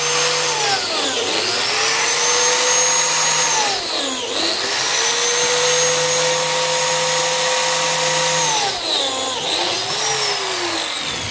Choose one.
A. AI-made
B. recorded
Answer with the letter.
B